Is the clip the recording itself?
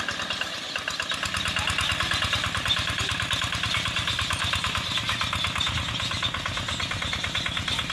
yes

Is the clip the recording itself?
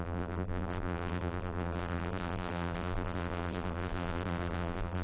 no